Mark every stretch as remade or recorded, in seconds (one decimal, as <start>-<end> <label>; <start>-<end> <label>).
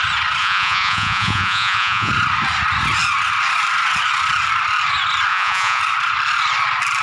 0.0-0.4 recorded; 0.4-2.1 remade; 2.1-5.3 recorded; 5.3-5.8 remade; 5.8-7.0 recorded